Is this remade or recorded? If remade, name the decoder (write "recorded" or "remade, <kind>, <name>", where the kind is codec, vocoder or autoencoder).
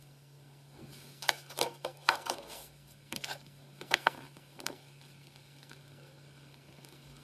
remade, codec, SNAC